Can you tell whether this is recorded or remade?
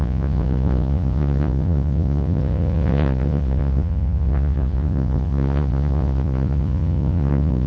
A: remade